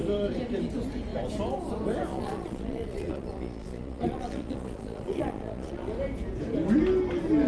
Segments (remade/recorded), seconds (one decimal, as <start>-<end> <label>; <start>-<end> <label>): 0.0-2.1 recorded; 2.1-5.9 remade; 5.9-7.5 recorded